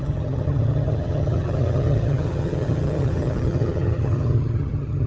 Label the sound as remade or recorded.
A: remade